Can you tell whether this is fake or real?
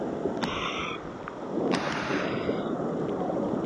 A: real